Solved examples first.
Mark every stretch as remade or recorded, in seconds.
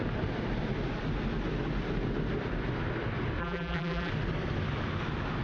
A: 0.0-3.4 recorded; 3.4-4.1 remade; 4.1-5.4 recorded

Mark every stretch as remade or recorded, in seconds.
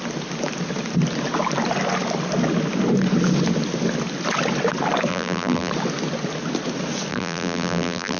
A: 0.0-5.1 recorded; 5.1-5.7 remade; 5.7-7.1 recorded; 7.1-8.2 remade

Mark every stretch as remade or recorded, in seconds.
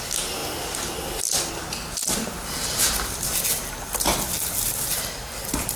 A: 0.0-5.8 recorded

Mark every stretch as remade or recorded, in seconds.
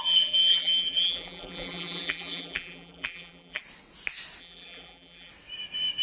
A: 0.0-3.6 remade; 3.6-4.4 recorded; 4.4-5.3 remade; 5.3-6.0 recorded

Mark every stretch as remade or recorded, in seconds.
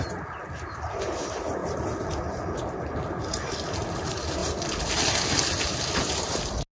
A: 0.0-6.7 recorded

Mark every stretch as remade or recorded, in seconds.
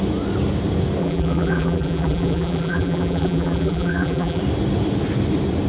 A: 0.0-1.0 recorded; 1.0-4.4 remade; 4.4-5.7 recorded